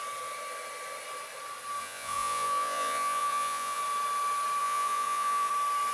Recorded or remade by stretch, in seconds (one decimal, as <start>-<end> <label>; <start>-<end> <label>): 0.0-1.8 recorded; 1.8-3.8 remade; 3.8-4.6 recorded; 4.6-5.5 remade; 5.5-5.9 recorded